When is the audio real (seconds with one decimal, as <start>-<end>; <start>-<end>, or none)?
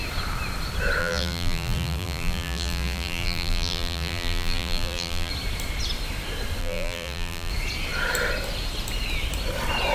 0.0-1.0; 5.3-6.6; 7.5-9.9